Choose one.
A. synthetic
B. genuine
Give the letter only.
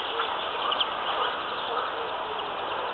A